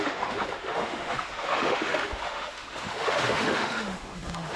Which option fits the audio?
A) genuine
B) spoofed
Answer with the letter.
B